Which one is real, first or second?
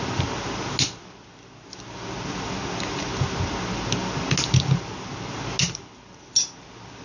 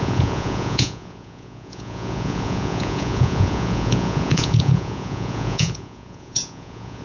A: first